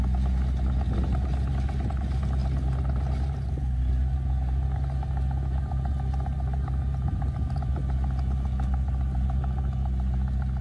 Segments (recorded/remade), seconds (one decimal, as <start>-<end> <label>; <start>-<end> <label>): 0.0-10.6 recorded

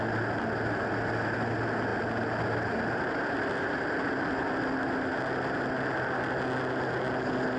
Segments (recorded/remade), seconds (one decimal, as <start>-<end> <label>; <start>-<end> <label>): 0.0-7.6 recorded

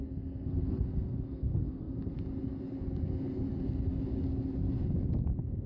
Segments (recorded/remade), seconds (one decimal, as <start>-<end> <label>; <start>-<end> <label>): 0.0-1.9 remade; 1.9-5.3 recorded; 5.3-5.7 remade

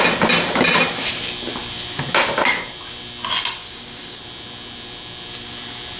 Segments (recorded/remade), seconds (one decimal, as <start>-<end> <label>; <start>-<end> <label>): 0.0-3.6 recorded; 3.6-4.2 remade; 4.2-6.0 recorded

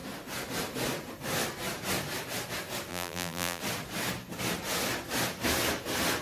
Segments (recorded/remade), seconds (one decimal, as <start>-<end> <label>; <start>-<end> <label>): 0.0-2.9 recorded; 2.9-3.6 remade; 3.6-6.2 recorded

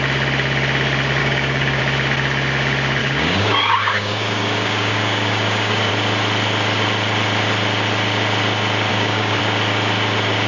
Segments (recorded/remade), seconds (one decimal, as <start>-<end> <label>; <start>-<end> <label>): 0.0-1.2 recorded; 1.2-1.8 remade; 1.8-3.0 recorded; 3.0-5.9 remade; 5.9-8.9 recorded; 8.9-9.4 remade; 9.4-10.5 recorded

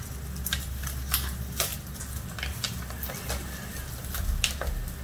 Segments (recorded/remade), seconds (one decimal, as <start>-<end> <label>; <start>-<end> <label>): 0.0-5.0 recorded

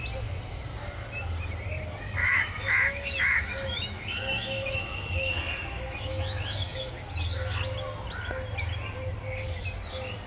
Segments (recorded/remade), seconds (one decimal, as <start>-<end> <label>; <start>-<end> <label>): 0.0-2.2 recorded; 2.2-6.9 remade; 6.9-10.3 recorded